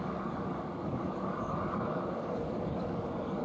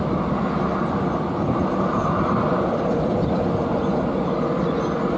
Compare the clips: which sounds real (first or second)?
second